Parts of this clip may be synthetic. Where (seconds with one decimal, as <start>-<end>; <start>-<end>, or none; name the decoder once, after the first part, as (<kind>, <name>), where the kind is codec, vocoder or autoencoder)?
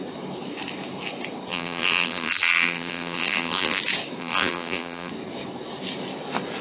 1.5-3.8 (vocoder, BigVGAN v2); 4.2-5.1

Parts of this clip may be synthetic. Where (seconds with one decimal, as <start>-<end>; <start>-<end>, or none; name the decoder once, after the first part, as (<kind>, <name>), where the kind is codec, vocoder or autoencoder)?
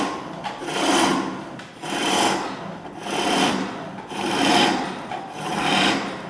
none